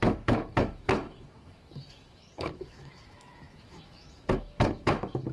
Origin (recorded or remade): remade